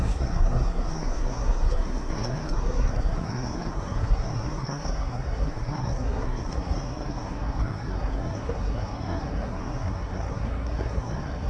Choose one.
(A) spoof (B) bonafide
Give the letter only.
A